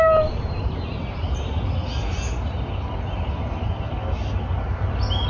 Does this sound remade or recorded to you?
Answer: recorded